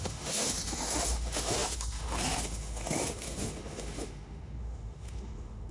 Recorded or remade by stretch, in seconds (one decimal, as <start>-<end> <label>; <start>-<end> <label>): 0.0-5.7 remade